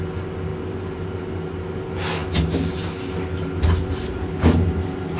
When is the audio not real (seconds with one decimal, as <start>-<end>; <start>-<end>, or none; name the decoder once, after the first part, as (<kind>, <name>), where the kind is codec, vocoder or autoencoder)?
none